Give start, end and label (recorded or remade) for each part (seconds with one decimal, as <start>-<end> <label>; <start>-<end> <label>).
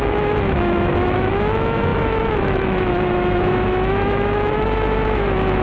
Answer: 0.0-5.6 remade